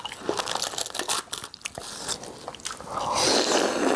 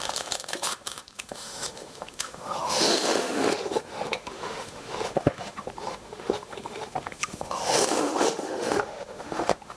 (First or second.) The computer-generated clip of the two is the second